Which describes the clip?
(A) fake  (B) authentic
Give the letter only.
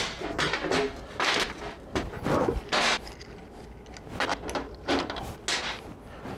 B